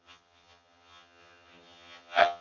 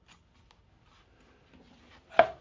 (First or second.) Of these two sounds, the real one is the second